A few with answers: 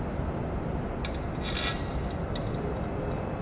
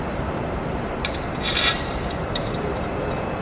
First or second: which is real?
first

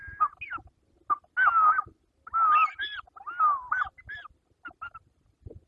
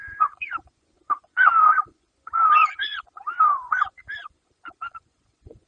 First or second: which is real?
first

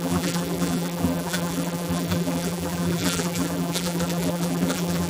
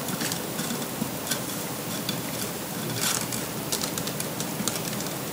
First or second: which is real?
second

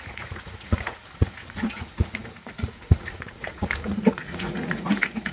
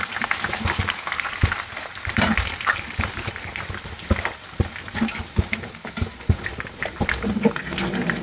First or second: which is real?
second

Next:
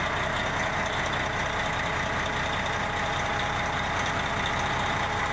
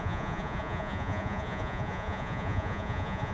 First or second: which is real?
first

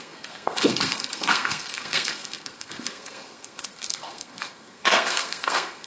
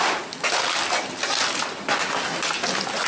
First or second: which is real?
second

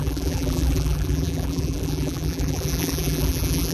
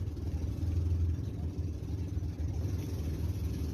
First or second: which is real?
second